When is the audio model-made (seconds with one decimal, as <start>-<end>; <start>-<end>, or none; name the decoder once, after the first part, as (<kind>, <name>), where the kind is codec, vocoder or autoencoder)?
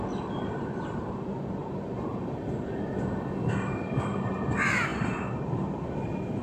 none